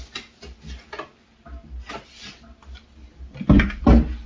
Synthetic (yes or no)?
no